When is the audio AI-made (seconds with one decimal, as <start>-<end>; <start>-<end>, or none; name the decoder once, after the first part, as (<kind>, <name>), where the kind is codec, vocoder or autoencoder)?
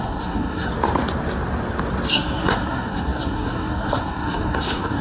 0.0-0.7 (codec, SNAC); 2.1-5.0